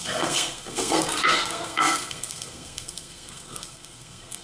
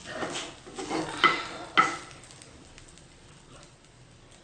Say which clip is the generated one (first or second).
first